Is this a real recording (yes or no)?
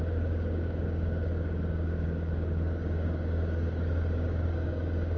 no